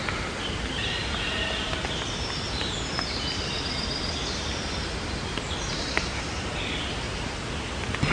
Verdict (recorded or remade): recorded